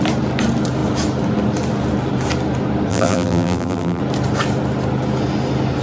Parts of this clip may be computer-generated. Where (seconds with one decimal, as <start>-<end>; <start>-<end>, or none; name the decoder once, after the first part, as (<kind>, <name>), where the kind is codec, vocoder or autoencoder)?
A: 2.9-4.0 (vocoder, BigVGAN v2)